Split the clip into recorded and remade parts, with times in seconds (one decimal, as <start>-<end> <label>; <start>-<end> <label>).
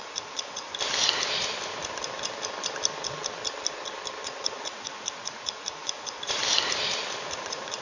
0.0-0.7 remade; 0.7-4.2 recorded; 4.2-6.4 remade; 6.4-7.1 recorded; 7.1-7.8 remade